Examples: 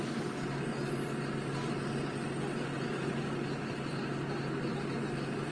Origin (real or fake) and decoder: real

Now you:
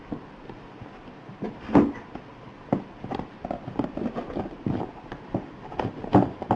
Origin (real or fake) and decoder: real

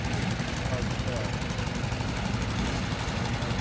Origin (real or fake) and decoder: real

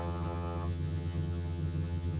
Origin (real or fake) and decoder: fake, vocoder, HiFi-GAN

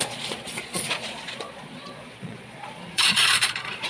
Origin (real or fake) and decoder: fake, vocoder, Vocos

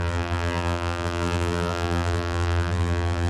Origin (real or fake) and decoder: fake, vocoder, BigVGAN v2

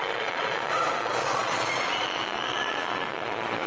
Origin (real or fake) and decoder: fake, vocoder, Vocos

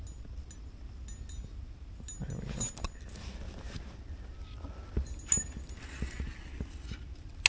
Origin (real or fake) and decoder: real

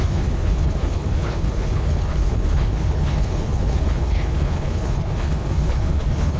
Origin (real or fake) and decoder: fake, codec, HILCodec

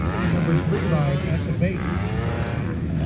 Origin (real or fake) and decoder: real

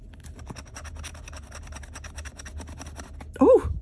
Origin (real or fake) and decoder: real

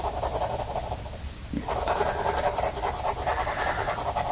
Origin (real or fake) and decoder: real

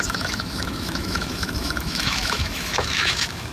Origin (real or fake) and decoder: fake, autoencoder, DAC-VAE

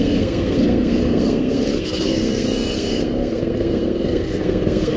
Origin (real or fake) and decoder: fake, codec, SNAC